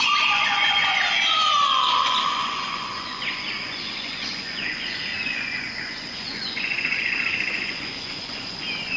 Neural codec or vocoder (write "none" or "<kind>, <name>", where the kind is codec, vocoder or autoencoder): vocoder, Vocos